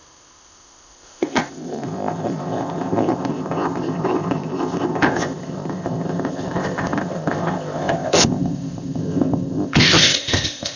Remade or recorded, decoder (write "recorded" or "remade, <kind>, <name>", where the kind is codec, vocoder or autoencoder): remade, codec, ZipCodec